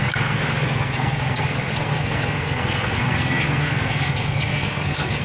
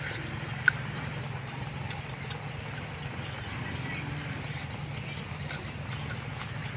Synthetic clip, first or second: first